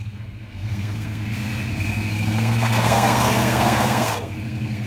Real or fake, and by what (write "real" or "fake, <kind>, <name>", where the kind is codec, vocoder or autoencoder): fake, codec, SNAC